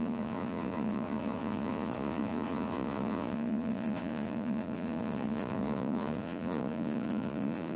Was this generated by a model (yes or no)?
yes